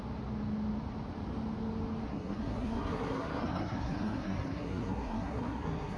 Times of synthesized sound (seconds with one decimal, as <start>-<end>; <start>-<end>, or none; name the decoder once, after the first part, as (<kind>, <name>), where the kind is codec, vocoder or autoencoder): 2.1-6.0 (codec, SNAC)